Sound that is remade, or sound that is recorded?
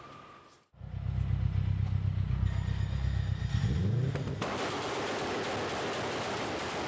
recorded